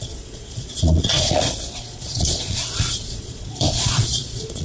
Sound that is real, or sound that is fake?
fake